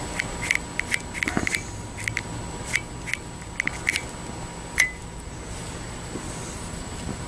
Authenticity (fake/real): real